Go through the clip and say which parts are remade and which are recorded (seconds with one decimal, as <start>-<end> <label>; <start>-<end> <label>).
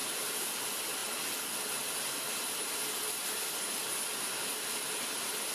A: 0.0-0.6 remade; 0.6-5.5 recorded